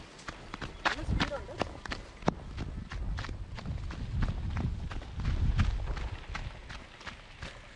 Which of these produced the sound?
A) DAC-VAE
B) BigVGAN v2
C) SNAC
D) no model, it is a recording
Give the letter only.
D